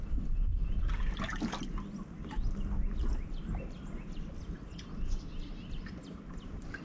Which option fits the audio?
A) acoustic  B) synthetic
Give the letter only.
A